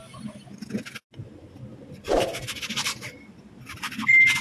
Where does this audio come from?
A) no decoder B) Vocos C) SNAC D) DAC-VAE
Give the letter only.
A